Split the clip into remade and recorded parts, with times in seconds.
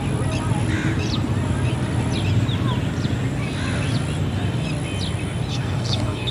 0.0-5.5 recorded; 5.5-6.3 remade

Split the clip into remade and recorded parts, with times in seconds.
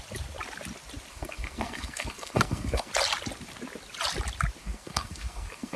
0.0-1.1 recorded; 1.1-2.9 remade; 2.9-4.6 recorded; 4.6-5.8 remade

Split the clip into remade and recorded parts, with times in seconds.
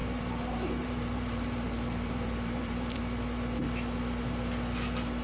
0.0-3.0 remade; 3.0-5.2 recorded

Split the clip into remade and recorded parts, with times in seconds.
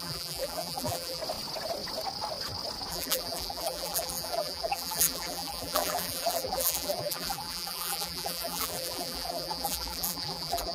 0.0-1.2 remade; 1.2-2.9 recorded; 2.9-10.7 remade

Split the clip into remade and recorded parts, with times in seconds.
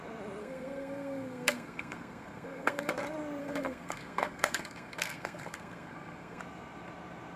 0.0-0.4 recorded; 0.4-2.9 remade; 2.9-3.4 recorded; 3.4-6.4 remade; 6.4-7.4 recorded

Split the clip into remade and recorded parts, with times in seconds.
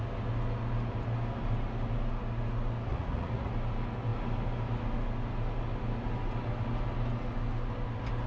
0.0-2.9 recorded; 2.9-3.5 remade; 3.5-8.3 recorded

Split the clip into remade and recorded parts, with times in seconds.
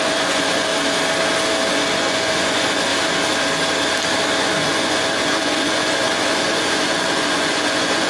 0.0-0.7 remade; 0.7-1.7 recorded; 1.7-2.9 remade; 2.9-4.4 recorded; 4.4-8.1 remade